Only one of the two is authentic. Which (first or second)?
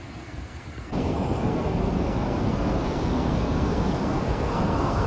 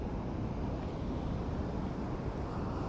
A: second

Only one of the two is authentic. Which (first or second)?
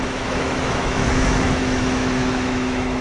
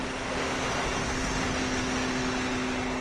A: second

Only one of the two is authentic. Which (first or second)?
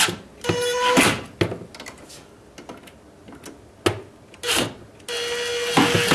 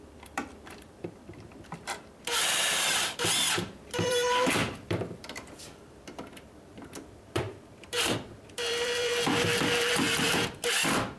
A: first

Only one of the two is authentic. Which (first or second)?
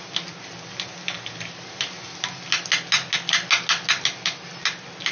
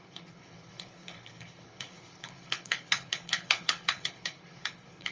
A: first